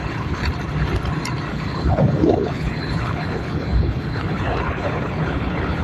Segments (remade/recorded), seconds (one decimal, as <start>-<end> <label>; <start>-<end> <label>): 0.0-0.4 remade; 0.4-1.5 recorded; 1.5-5.8 remade